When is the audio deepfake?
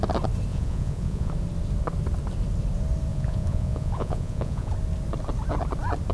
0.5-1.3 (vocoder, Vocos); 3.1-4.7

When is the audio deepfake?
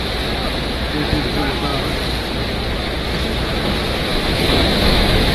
4.1-5.3 (autoencoder, DAC-VAE)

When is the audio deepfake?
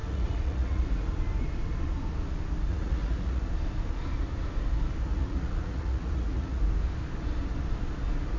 0.0-1.1 (vocoder, Vocos); 2.7-3.4; 5.1-6.6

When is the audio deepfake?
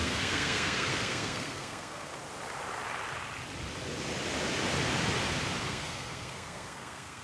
0.0-2.1 (codec, SNAC); 5.6-7.2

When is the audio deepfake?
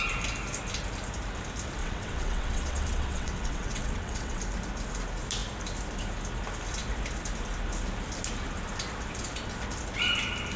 1.8-4.4 (vocoder, WaveNeXt)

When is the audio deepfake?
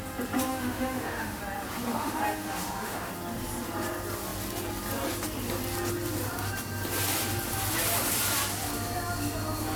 0.5-1.4 (autoencoder, DAC-VAE); 1.9-3.1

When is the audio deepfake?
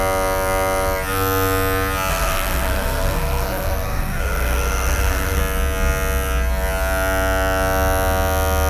2.1-5.4 (codec, SNAC)